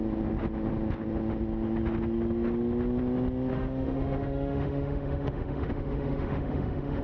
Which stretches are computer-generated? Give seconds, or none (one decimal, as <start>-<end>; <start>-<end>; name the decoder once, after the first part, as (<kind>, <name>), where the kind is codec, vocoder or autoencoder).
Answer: 3.5-7.0 (autoencoder, DAC-VAE)